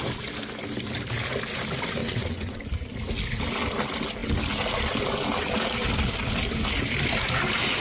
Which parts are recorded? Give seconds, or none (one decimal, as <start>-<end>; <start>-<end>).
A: 0.0-2.0; 2.6-7.8